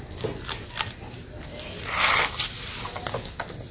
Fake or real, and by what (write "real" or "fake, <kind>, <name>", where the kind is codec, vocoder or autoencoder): real